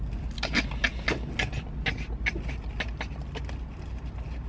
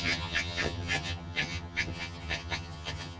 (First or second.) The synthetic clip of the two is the second